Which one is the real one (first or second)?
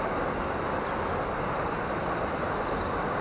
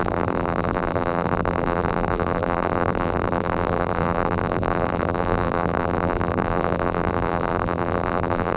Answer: first